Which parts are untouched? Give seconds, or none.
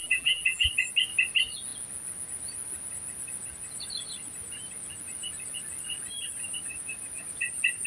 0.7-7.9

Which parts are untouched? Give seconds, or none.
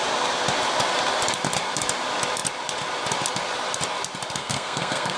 0.0-4.4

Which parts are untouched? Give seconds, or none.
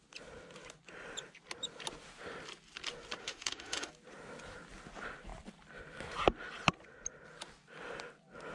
0.0-3.2; 3.9-8.5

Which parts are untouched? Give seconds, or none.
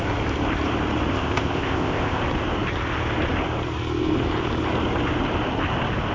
0.0-1.1; 2.2-6.1